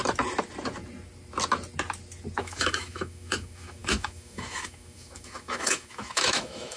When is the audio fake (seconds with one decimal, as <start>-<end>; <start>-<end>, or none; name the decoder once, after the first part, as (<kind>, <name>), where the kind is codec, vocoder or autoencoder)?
2.4-6.8 (autoencoder, DAC-VAE)